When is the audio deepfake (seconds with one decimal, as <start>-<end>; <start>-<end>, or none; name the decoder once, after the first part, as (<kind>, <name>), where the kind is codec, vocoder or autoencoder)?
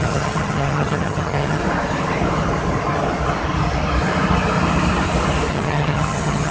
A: 0.0-1.6 (vocoder, HiFi-GAN); 5.5-6.5